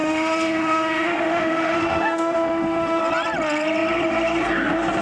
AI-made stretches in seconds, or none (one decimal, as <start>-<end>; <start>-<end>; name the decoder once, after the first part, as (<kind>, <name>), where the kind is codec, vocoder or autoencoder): 0.0-3.0 (autoencoder, DAC-VAE)